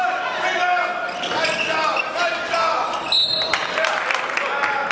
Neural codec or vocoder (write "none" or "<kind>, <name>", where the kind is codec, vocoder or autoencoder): none